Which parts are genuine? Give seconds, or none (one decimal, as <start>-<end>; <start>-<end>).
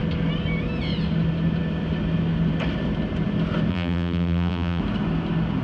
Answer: 0.0-3.7; 4.8-5.6